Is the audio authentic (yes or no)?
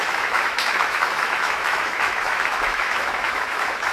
no